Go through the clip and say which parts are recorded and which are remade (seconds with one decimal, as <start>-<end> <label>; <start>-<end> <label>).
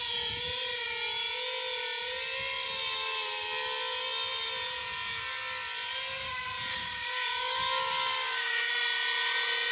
0.0-6.7 recorded; 6.7-8.7 remade; 8.7-9.7 recorded